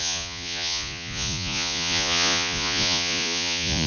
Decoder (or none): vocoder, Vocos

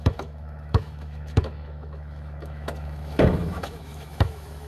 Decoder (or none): autoencoder, DAC-VAE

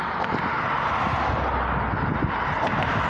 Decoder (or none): none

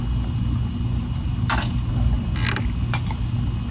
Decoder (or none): none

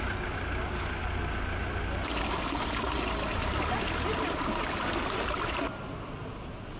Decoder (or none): none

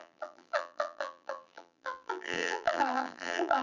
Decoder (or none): vocoder, BigVGAN v2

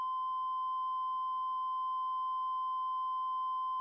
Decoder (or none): none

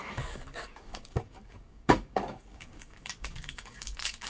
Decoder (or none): codec, DAC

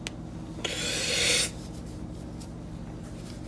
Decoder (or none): none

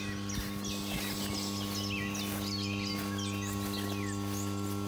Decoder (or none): none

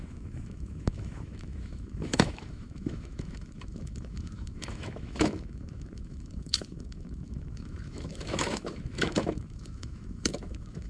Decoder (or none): autoencoder, DAC-VAE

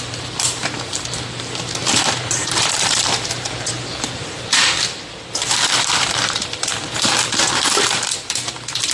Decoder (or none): vocoder, BigVGAN v2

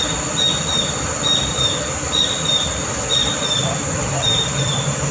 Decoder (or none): none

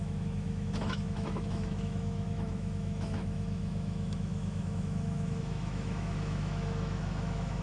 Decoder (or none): autoencoder, DAC-VAE